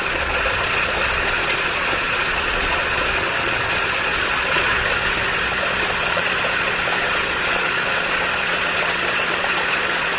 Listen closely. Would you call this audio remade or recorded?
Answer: remade